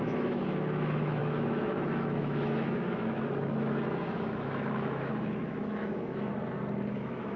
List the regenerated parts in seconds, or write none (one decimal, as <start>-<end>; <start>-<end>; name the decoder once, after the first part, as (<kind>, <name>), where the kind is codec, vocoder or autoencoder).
0.0-6.3 (autoencoder, DAC-VAE); 6.9-7.4